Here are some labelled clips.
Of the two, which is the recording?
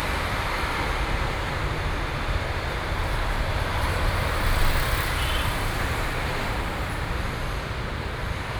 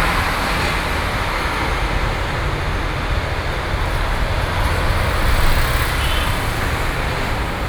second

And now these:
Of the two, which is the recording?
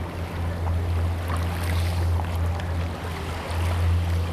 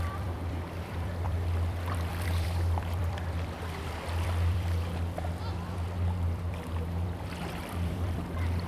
first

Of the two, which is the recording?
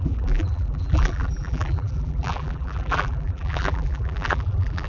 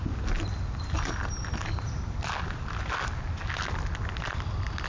second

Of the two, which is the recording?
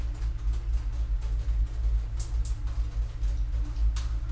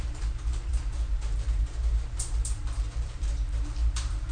first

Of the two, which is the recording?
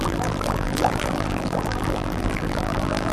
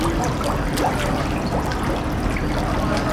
second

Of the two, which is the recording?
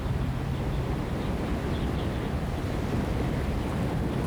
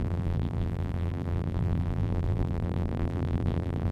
first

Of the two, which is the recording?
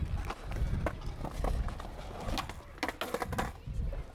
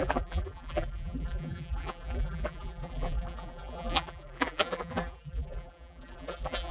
first